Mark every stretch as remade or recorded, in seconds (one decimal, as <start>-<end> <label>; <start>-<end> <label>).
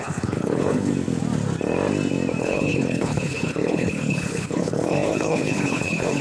0.0-0.9 remade; 0.9-2.4 recorded; 2.4-6.2 remade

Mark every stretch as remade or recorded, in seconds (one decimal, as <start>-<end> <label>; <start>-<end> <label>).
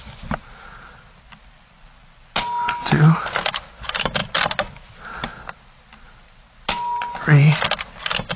0.0-8.4 recorded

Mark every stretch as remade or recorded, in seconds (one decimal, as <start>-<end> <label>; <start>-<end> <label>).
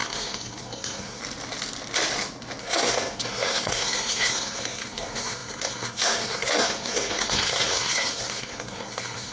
0.0-1.2 remade; 1.2-2.6 recorded; 2.6-9.3 remade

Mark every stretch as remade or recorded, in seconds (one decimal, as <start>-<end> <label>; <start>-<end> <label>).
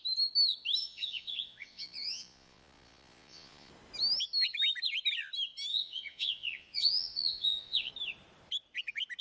0.0-0.8 recorded; 0.8-3.7 remade; 3.7-5.7 recorded; 5.7-7.9 remade; 7.9-9.2 recorded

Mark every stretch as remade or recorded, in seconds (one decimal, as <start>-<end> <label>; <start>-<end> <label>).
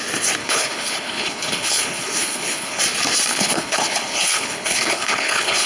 0.0-0.4 recorded; 0.4-2.8 remade; 2.8-3.3 recorded; 3.3-5.7 remade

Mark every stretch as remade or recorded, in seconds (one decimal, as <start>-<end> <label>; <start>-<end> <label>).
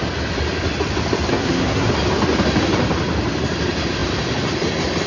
0.0-1.3 recorded; 1.3-1.9 remade; 1.9-5.1 recorded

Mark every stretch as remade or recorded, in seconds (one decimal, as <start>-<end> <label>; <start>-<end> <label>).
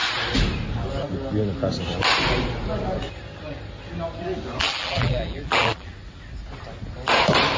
0.0-4.6 recorded; 4.6-5.9 remade; 5.9-7.6 recorded